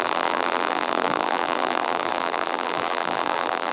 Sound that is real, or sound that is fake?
fake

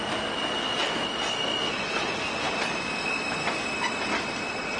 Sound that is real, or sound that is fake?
real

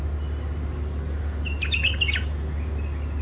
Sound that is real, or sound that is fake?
real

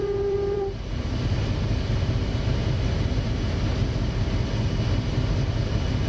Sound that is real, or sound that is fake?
fake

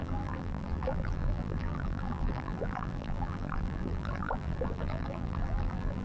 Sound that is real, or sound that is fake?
fake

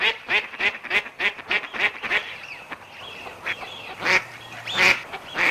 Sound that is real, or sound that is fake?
fake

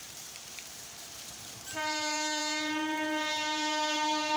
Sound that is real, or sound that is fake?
fake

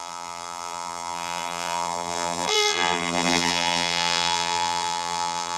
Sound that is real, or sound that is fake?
fake